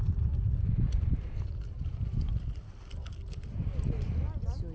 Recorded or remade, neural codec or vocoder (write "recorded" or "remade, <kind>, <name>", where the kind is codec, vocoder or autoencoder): recorded